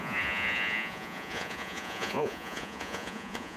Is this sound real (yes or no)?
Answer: no